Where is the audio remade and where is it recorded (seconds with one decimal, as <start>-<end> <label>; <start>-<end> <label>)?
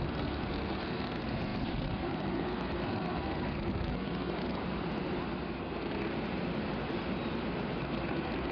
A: 0.0-4.6 remade; 4.6-5.6 recorded; 5.6-6.1 remade; 6.1-7.8 recorded; 7.8-8.5 remade